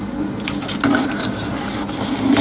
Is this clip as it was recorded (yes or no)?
yes